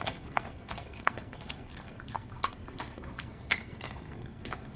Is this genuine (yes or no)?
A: no